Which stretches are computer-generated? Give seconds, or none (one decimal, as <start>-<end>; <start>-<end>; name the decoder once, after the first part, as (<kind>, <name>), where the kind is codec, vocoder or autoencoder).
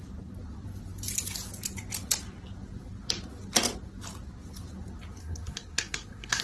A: 5.2-6.4 (codec, SNAC)